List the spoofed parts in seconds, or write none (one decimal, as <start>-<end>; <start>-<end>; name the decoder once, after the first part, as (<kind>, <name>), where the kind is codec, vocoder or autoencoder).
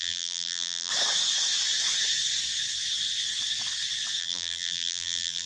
0.0-0.9 (vocoder, BigVGAN v2); 4.2-5.5